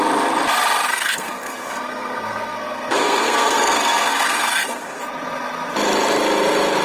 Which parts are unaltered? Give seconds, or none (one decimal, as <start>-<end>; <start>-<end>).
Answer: 0.0-0.9; 5.0-6.8